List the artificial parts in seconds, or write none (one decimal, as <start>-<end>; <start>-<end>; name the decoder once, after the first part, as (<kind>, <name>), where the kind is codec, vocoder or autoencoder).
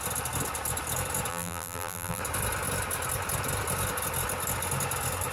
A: 1.3-2.2 (vocoder, BigVGAN v2)